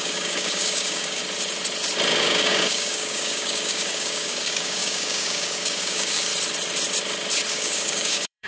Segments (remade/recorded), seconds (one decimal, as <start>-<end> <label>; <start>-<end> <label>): 0.0-1.2 remade; 1.2-2.2 recorded; 2.2-6.3 remade; 6.3-7.5 recorded; 7.5-8.5 remade